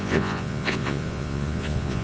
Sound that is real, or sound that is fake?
fake